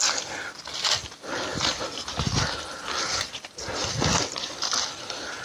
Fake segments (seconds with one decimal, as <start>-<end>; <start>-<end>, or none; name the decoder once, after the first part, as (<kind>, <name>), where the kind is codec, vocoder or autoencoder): none